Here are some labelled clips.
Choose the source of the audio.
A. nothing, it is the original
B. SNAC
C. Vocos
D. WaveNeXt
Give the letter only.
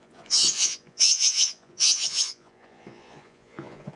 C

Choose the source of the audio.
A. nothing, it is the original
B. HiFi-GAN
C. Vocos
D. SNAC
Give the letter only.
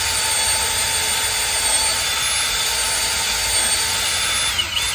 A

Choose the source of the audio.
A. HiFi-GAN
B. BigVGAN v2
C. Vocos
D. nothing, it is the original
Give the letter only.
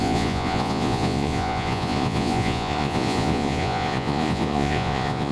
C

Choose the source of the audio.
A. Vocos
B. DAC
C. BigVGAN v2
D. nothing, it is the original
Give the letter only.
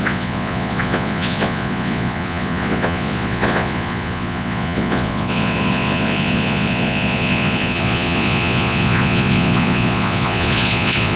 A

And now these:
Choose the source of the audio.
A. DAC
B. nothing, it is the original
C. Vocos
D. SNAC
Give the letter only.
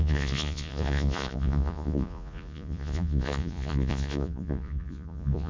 C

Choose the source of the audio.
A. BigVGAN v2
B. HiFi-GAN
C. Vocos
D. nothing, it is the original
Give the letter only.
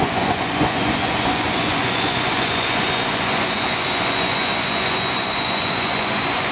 C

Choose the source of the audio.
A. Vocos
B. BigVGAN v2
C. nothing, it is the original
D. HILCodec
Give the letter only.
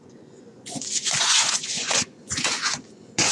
A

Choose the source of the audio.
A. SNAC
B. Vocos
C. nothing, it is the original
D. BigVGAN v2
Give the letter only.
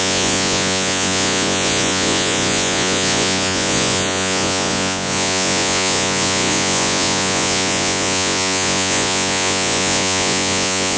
B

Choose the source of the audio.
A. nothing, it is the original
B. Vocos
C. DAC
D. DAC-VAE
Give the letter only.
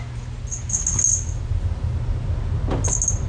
A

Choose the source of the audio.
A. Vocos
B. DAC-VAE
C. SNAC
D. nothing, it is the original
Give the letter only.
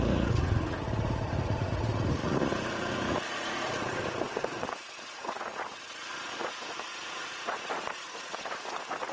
A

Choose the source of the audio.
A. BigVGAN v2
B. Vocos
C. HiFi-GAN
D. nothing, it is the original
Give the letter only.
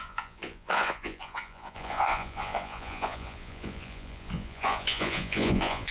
B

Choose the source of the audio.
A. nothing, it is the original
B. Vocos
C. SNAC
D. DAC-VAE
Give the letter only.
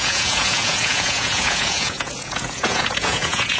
B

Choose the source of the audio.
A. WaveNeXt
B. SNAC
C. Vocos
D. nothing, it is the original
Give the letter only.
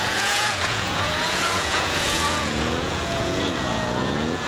C